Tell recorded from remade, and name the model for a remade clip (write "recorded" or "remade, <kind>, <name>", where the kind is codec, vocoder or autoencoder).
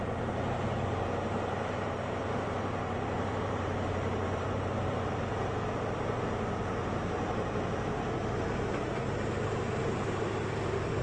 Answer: remade, vocoder, BigVGAN v2